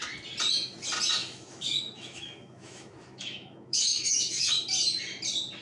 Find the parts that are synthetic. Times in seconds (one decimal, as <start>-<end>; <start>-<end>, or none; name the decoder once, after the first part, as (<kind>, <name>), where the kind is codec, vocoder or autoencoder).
1.2-4.5 (autoencoder, DAC-VAE)